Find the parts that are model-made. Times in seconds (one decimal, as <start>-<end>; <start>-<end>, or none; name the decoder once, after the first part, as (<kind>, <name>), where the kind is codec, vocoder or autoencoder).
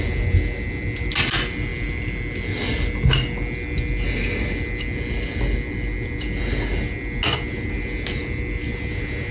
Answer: none